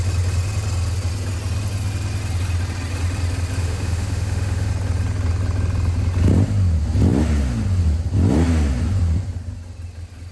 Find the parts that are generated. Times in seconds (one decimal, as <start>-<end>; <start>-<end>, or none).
3.6-4.7

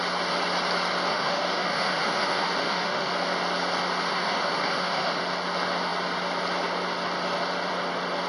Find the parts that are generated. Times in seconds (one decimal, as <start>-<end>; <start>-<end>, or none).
1.1-3.1; 4.1-5.2

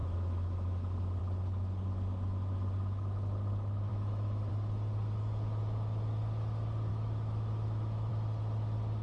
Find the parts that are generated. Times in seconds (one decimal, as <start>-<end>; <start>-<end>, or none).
0.0-1.2; 3.9-4.5; 6.9-8.1